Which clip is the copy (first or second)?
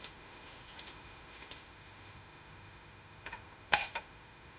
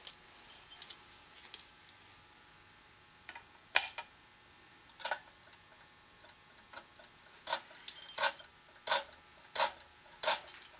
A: first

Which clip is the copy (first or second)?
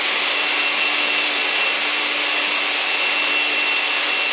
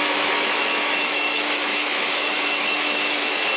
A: second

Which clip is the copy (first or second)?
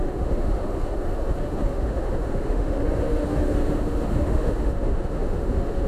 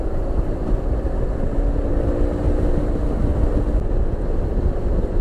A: first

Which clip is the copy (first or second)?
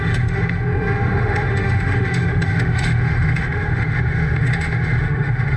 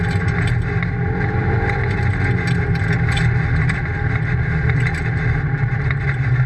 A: first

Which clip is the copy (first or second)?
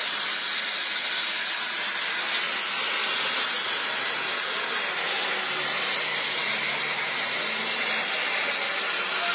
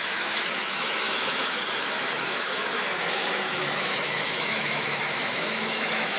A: second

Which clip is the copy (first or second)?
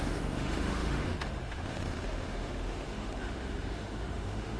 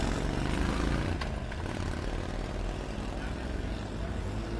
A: first